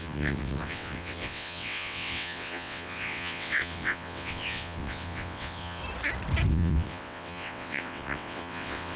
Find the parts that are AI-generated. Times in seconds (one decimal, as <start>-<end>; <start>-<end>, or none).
0.0-5.8; 6.5-9.0

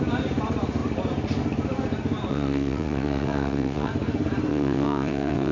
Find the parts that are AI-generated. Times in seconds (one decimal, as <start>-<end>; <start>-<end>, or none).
2.3-3.9; 4.5-5.5

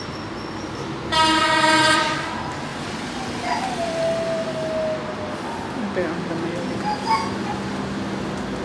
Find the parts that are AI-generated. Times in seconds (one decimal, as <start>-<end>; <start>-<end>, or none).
none

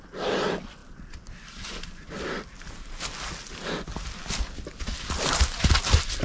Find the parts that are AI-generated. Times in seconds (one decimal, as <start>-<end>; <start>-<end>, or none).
none

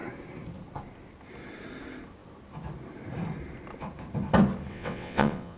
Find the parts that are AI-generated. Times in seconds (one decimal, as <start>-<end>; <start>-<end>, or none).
4.7-5.6

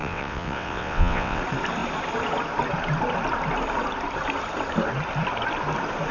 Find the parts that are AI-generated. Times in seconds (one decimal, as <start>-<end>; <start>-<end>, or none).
0.0-1.4

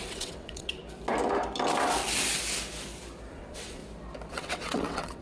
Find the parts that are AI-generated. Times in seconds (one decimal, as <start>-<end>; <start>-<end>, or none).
0.0-0.8; 3.3-3.8; 4.3-5.2

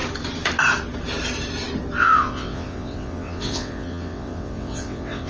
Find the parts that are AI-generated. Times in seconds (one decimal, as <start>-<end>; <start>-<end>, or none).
2.0-5.3